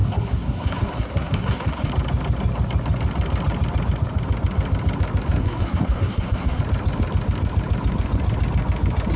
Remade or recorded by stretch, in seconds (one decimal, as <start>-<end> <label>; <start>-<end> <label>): 0.0-1.9 remade; 1.9-5.4 recorded; 5.4-6.6 remade; 6.6-9.2 recorded